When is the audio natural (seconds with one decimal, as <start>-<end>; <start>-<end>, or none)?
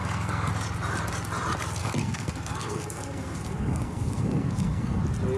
0.5-1.8; 5.0-5.4